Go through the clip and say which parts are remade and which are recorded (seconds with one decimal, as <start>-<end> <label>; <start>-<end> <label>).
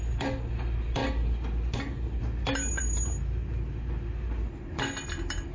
0.0-5.5 recorded